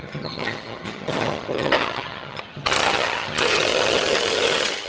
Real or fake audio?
fake